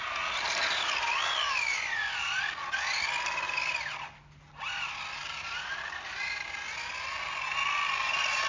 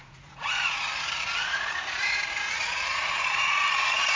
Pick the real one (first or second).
first